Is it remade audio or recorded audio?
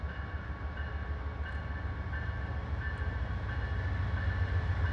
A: recorded